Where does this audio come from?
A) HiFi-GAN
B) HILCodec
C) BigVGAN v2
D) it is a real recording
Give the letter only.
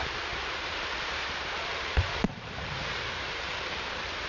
C